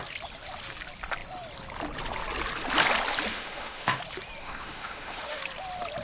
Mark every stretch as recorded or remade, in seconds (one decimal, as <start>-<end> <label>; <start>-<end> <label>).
0.0-3.3 recorded; 3.3-4.0 remade; 4.0-4.4 recorded; 4.4-5.4 remade; 5.4-6.0 recorded